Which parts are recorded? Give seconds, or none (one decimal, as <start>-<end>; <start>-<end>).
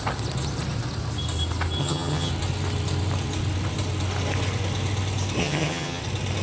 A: 0.0-1.8; 2.3-5.4; 6.0-6.4